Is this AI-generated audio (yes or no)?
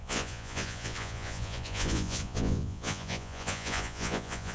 yes